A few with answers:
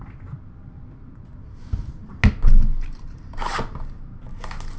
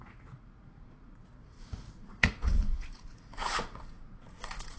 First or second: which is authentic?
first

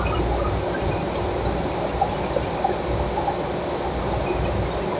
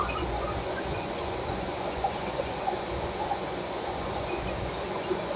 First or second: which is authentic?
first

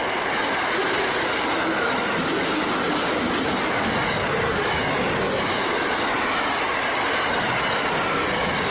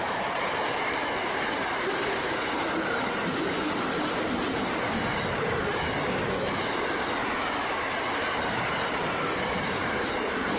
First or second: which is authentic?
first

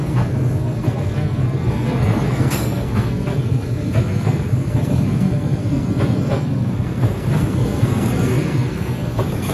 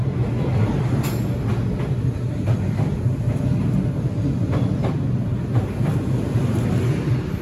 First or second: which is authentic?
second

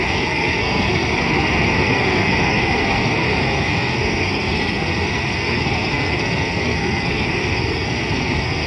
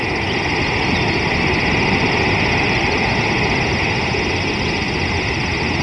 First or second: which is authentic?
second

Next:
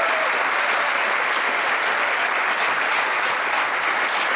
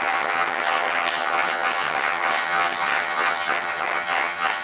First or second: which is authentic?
first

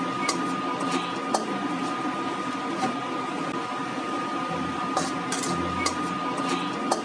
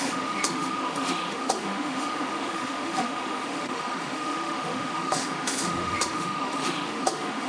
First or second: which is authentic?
first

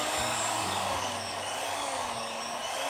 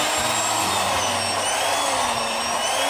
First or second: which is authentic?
second